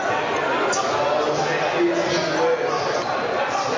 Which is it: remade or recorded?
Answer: recorded